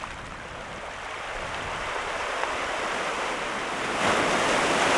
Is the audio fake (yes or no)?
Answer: no